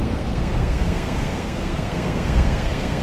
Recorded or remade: remade